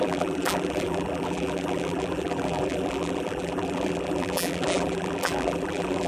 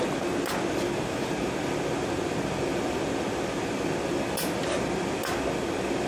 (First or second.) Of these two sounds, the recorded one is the second